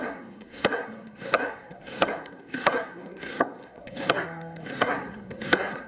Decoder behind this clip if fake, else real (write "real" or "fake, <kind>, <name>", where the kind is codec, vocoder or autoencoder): fake, codec, SNAC